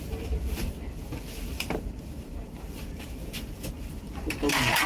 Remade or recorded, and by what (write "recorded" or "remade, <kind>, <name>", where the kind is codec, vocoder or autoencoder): remade, vocoder, BigVGAN v2